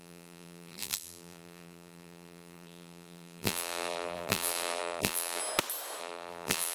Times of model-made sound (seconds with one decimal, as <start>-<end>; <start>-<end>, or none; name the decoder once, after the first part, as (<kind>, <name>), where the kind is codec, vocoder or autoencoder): 0.0-5.4 (vocoder, BigVGAN v2); 6.0-6.7